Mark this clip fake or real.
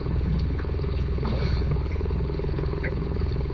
fake